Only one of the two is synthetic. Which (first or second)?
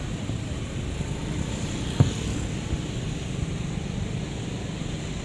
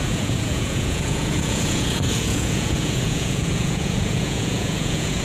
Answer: second